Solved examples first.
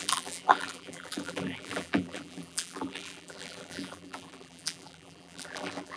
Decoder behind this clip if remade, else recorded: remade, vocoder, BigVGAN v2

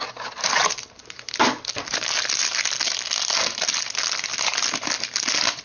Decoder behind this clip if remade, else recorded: recorded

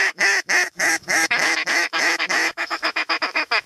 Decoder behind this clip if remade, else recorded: remade, autoencoder, DAC-VAE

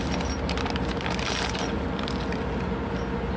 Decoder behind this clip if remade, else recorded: recorded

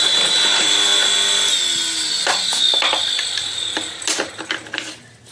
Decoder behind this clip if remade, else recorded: recorded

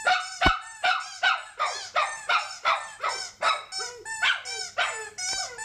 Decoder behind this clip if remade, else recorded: recorded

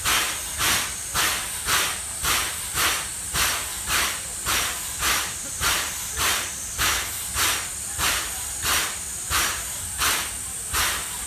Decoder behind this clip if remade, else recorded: remade, vocoder, BigVGAN v2